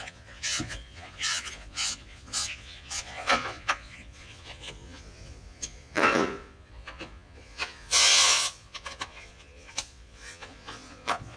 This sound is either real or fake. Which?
fake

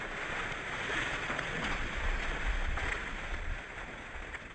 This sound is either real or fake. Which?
fake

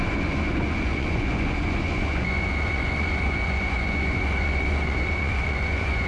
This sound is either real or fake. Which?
fake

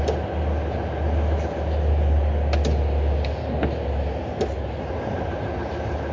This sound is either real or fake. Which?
real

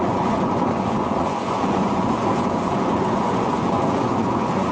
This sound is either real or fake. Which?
fake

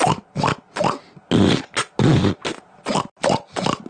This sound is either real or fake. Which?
real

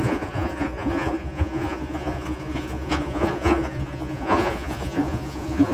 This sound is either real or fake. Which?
fake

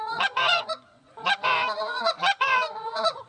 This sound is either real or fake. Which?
fake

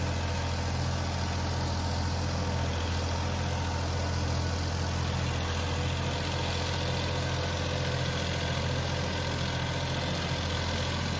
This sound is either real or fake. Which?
real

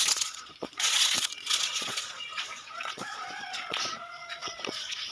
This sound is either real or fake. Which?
fake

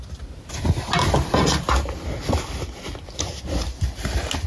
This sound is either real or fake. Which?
real